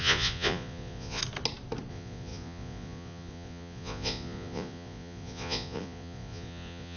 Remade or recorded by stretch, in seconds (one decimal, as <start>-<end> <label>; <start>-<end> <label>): 0.0-1.2 remade; 1.2-1.9 recorded; 1.9-7.0 remade